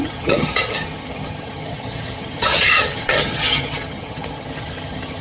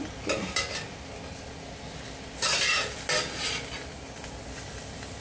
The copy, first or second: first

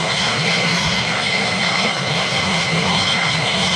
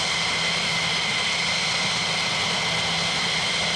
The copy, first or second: first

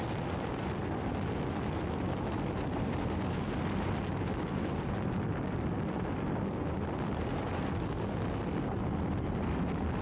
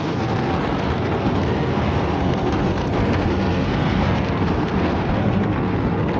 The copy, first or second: second